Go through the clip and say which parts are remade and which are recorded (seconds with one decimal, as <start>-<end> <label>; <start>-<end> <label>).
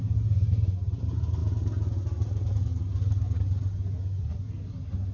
0.0-5.1 recorded